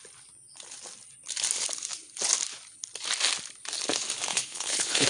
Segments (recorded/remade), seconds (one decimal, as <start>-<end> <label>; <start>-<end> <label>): 0.0-4.3 recorded; 4.3-5.1 remade